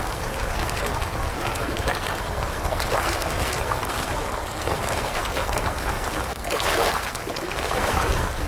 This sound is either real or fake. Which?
fake